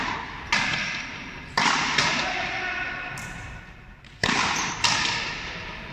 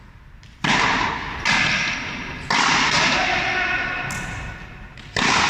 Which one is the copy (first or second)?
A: first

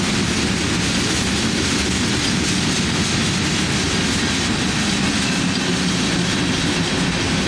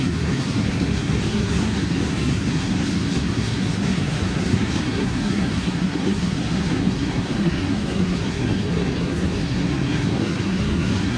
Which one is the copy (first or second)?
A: second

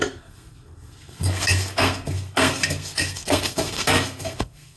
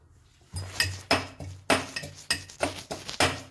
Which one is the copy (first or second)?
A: first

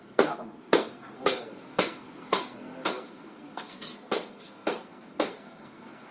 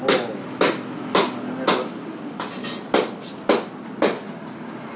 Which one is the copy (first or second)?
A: first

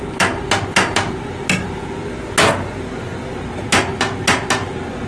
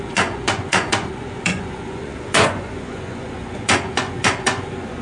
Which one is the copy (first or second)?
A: second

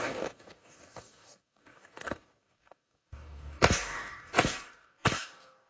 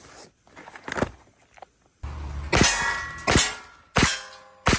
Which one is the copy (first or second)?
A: first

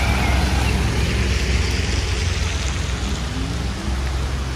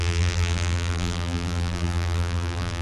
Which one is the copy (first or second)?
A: second